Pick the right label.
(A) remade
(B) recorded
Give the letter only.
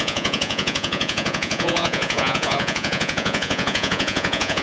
A